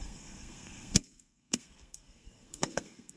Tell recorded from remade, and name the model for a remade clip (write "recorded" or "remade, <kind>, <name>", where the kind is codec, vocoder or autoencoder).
remade, codec, SNAC